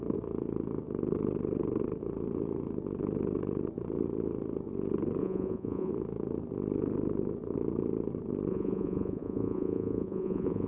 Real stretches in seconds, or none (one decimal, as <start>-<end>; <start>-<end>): 0.0-5.2; 5.9-8.5